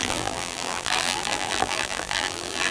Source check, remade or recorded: remade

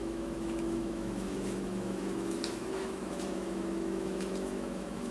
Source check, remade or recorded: remade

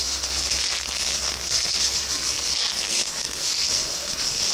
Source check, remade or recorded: remade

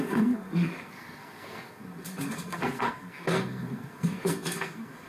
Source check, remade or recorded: remade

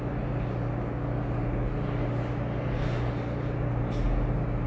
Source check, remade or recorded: recorded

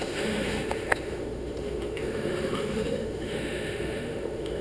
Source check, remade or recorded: remade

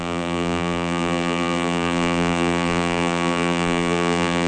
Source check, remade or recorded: remade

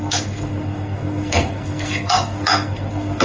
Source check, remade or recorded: remade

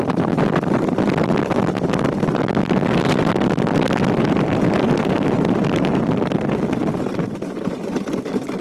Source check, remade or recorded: recorded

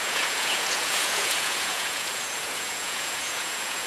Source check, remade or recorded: remade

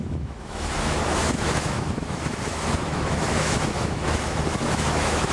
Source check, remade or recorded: remade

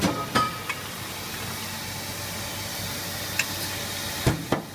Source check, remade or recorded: recorded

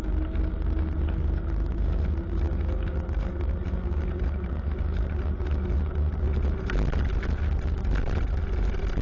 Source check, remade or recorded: recorded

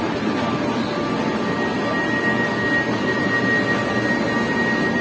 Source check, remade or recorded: recorded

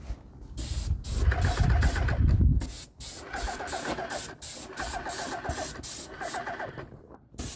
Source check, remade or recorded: recorded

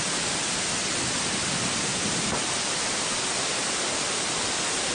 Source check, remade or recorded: recorded